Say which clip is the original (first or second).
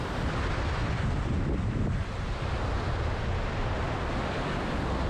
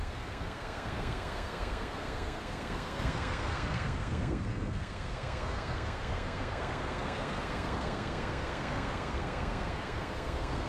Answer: first